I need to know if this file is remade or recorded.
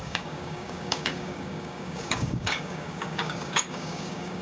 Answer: remade